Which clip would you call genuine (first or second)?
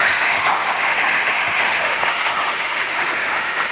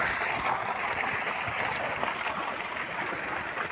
second